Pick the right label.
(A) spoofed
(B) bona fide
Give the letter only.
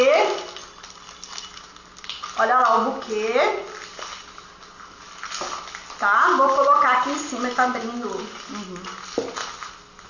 B